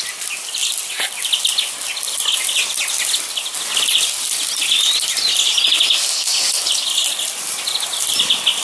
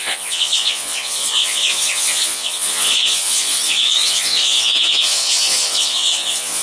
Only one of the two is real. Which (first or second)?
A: first